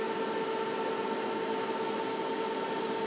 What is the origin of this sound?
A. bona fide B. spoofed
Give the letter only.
A